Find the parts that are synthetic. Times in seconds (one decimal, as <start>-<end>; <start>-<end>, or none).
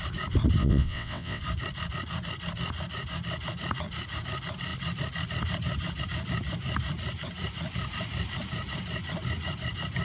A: 0.6-1.4